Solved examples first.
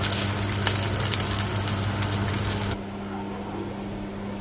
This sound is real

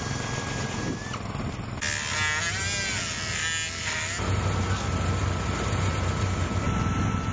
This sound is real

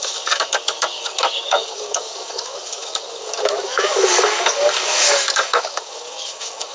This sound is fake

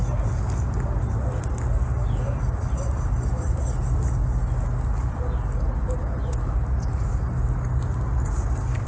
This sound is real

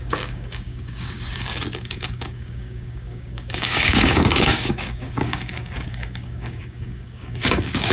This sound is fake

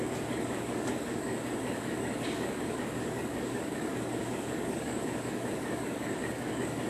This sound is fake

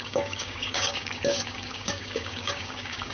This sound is fake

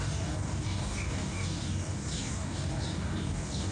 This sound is fake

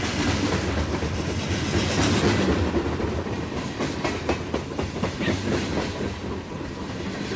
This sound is real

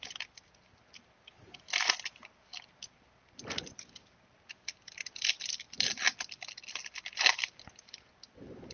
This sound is real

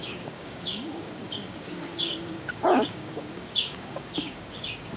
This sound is fake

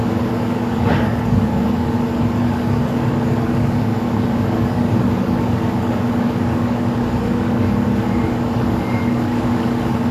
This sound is fake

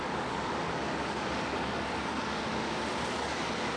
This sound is fake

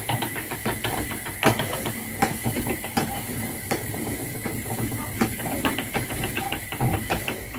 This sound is fake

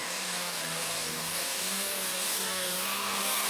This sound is fake